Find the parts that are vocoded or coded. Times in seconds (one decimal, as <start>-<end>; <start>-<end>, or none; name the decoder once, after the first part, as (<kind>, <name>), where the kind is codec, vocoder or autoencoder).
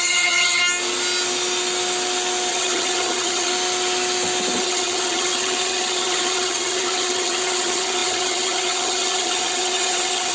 0.0-0.6 (vocoder, HiFi-GAN); 2.5-3.5; 4.6-10.3